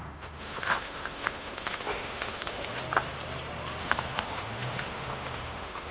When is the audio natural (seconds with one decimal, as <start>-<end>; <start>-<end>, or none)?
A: 2.8-3.8